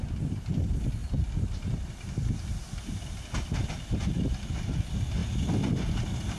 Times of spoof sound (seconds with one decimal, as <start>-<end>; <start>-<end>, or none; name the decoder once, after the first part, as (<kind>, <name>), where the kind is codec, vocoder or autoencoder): none